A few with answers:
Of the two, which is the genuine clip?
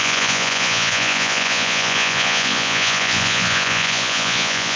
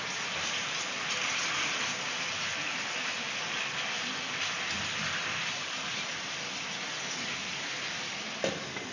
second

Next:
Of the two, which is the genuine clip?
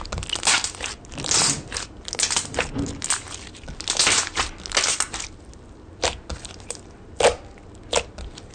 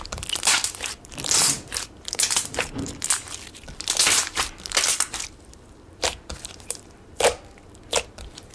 first